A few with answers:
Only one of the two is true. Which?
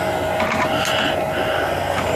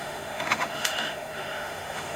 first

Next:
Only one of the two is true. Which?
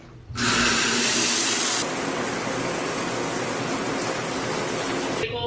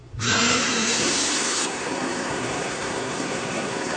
first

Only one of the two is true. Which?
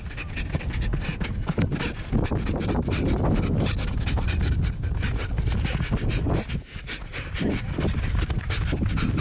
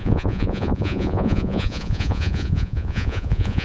first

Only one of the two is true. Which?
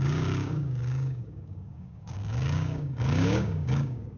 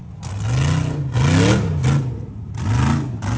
second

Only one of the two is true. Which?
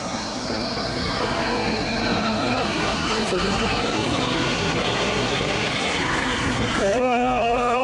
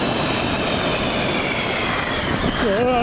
second